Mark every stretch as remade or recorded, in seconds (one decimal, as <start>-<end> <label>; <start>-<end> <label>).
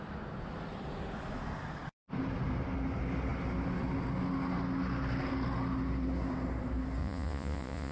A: 0.0-7.0 recorded; 7.0-7.9 remade